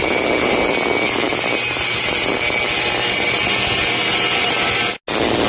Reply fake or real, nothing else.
real